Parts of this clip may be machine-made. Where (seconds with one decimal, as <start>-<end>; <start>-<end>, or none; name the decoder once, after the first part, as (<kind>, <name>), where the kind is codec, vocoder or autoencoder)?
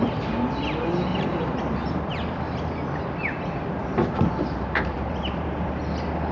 1.1-2.1 (vocoder, BigVGAN v2); 3.8-5.8